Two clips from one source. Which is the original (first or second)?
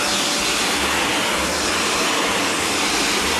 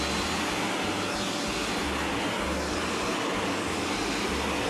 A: second